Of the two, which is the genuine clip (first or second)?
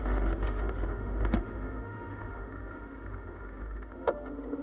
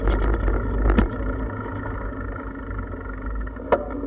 second